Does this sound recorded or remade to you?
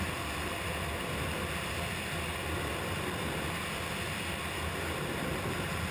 recorded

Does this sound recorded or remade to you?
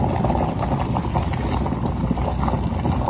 recorded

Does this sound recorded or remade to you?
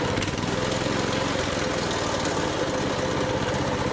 recorded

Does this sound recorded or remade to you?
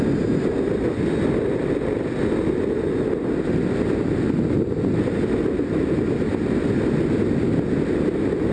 recorded